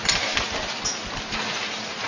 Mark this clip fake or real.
real